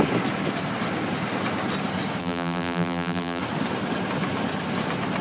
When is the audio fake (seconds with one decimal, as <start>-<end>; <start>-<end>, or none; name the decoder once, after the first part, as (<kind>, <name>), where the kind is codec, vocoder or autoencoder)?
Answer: 2.2-3.4 (vocoder, BigVGAN v2)